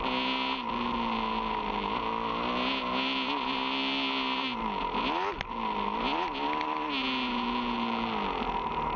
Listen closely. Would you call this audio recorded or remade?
recorded